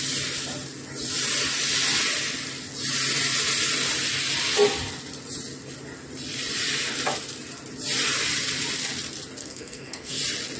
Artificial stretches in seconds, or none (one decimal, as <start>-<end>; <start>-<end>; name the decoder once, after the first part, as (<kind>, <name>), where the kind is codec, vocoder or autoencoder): 9.4-10.2 (codec, SNAC)